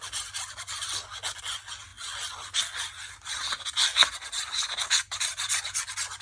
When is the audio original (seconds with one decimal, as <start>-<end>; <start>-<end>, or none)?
0.0-6.2